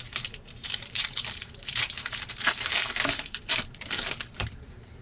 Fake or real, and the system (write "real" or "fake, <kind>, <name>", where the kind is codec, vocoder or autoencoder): fake, vocoder, BigVGAN v2